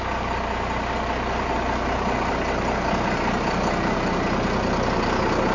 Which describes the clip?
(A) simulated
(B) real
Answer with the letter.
B